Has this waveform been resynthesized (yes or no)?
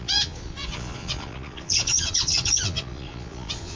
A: yes